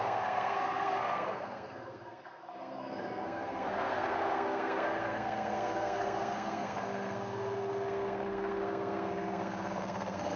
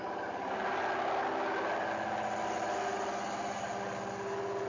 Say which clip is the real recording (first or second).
second